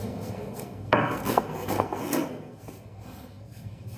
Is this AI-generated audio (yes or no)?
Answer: yes